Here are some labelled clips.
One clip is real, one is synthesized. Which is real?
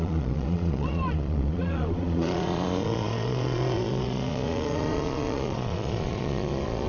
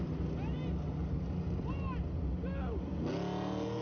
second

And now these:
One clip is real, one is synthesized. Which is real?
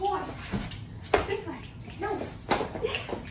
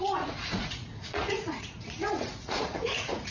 first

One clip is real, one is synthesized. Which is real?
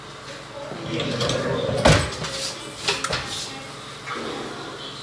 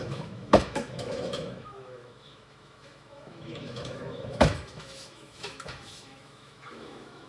first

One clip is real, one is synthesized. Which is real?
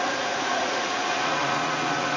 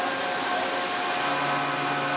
second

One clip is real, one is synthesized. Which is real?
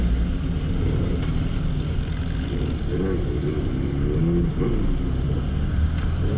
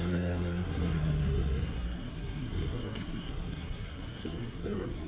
first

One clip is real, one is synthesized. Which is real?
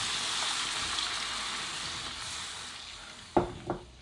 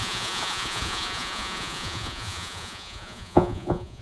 first